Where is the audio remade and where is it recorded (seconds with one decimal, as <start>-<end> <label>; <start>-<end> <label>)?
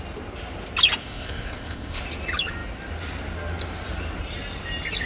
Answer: 0.0-1.0 recorded; 1.0-2.0 remade; 2.0-5.1 recorded